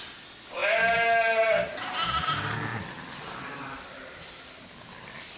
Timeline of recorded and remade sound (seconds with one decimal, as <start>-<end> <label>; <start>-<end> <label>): 0.0-5.4 recorded